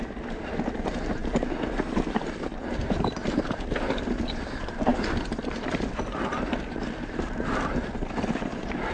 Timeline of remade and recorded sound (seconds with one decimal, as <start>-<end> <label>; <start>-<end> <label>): 0.0-8.9 recorded